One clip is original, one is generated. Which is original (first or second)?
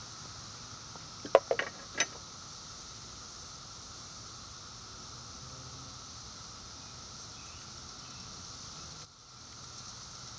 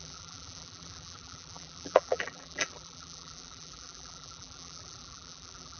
first